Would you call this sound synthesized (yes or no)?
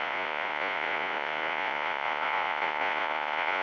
yes